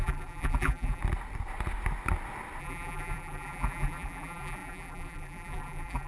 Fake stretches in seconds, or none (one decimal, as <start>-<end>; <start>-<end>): 0.0-1.0; 2.6-6.1

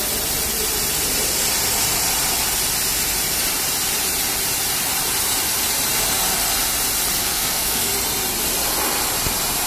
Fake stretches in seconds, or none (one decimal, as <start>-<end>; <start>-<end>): 7.2-7.9

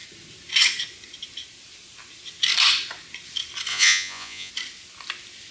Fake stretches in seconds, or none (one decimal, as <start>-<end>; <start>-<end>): 3.7-4.5

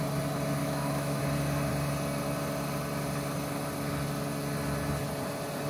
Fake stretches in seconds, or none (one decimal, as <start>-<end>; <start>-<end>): 0.6-1.2

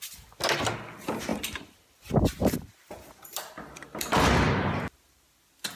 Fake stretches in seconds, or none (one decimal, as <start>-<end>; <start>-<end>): 1.3-4.0

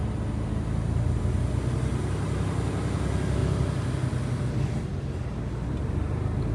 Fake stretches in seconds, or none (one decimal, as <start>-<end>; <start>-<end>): none